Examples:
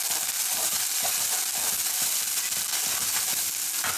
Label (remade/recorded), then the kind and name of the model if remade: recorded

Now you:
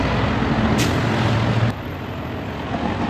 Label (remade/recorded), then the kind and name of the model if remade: recorded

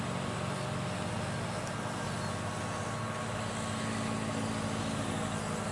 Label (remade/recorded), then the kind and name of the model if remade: recorded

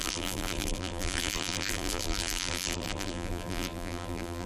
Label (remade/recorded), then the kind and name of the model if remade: remade, vocoder, BigVGAN v2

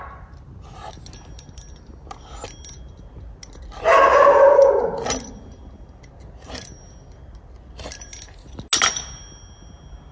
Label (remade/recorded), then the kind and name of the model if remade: recorded